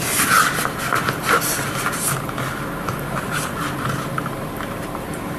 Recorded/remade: remade